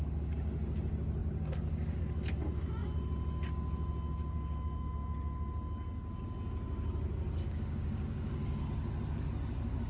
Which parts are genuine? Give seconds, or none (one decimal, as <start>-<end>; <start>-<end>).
0.0-1.2; 2.0-7.4; 8.6-9.9